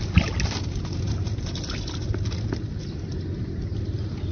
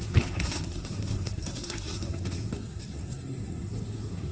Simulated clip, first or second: second